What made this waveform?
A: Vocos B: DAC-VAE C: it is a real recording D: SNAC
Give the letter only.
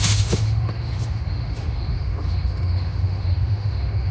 B